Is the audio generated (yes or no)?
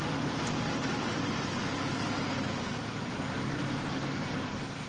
no